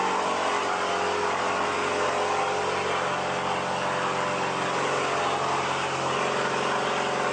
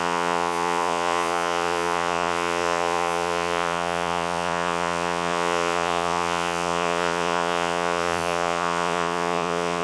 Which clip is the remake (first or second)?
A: second